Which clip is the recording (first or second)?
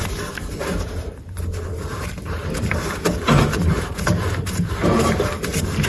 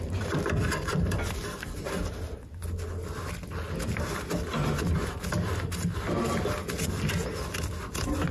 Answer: second